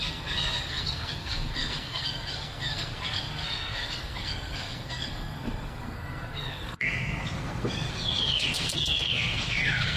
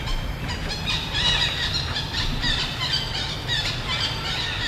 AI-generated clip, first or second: first